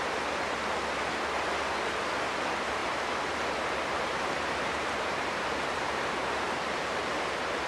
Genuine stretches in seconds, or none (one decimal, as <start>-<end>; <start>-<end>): 0.0-2.8; 7.3-7.7